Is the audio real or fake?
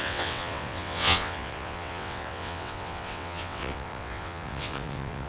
fake